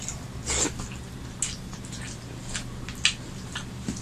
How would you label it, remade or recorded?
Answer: recorded